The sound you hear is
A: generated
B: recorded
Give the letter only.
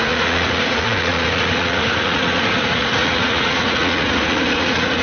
A